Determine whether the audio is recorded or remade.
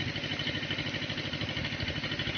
recorded